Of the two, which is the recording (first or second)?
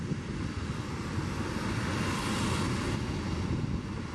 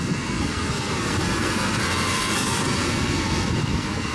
first